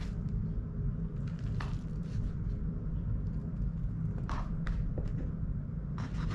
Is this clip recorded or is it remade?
recorded